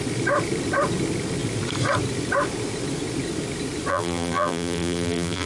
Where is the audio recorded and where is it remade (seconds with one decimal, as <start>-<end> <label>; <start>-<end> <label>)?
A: 0.0-3.9 recorded; 3.9-5.5 remade